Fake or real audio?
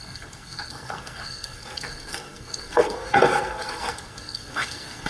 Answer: fake